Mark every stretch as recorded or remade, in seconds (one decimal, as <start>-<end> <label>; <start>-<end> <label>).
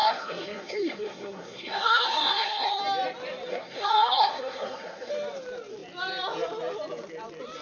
0.0-2.8 remade; 2.8-3.5 recorded; 3.5-5.1 remade; 5.1-7.6 recorded